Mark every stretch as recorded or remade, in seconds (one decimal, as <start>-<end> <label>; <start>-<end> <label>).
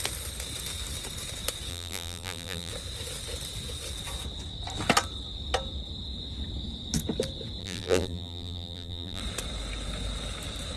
0.0-1.7 recorded; 1.7-2.7 remade; 2.7-7.6 recorded; 7.6-9.2 remade; 9.2-10.8 recorded